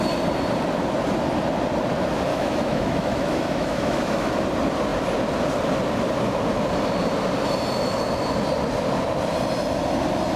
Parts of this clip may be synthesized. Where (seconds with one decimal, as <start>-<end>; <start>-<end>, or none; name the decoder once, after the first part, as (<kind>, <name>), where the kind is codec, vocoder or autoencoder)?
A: 2.3-4.3 (autoencoder, DAC-VAE)